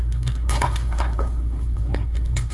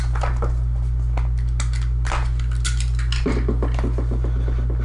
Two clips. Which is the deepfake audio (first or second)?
first